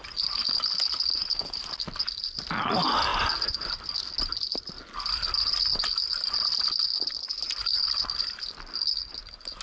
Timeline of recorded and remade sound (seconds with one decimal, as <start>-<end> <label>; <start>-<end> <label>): 0.0-9.6 recorded